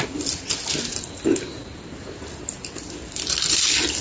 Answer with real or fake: real